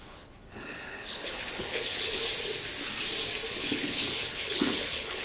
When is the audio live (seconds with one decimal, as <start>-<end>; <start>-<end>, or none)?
2.2-3.5